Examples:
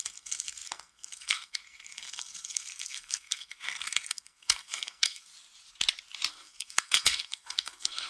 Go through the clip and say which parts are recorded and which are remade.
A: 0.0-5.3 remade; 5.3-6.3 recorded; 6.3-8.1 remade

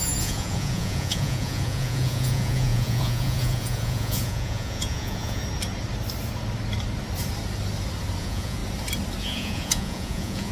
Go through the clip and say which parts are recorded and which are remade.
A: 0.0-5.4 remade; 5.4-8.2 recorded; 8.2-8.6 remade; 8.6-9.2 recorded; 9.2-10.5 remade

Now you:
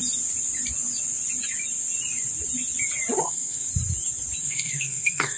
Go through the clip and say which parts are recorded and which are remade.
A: 0.0-3.2 recorded; 3.2-3.7 remade; 3.7-4.4 recorded; 4.4-5.4 remade

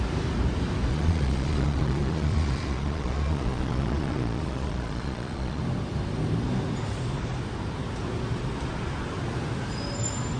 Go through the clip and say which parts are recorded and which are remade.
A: 0.0-0.9 recorded; 0.9-5.6 remade; 5.6-10.4 recorded

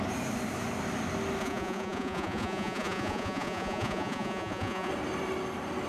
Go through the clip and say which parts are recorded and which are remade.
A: 0.0-1.4 recorded; 1.4-4.9 remade; 4.9-5.9 recorded

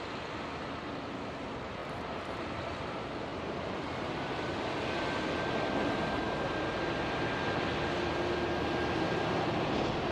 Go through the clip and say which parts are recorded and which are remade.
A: 0.0-1.8 recorded; 1.8-2.8 remade; 2.8-10.1 recorded

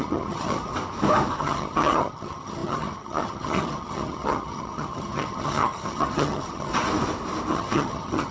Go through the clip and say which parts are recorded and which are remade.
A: 0.0-0.7 remade; 0.7-1.4 recorded; 1.4-6.7 remade; 6.7-7.5 recorded; 7.5-8.3 remade